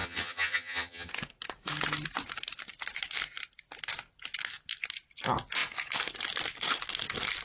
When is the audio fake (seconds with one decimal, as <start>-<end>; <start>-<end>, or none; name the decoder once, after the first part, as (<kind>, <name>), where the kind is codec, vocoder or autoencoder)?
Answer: 0.0-1.1 (vocoder, HiFi-GAN)